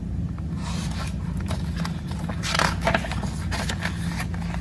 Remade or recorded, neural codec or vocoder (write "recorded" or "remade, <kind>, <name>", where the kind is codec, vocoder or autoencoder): recorded